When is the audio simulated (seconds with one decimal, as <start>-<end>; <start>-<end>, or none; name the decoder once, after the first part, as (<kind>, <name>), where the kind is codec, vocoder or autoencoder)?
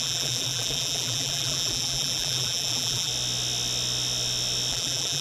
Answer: 0.0-3.1 (vocoder, BigVGAN v2); 4.7-5.2